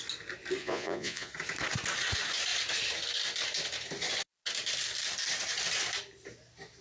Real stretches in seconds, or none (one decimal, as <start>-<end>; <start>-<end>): 0.0-0.6; 1.3-6.8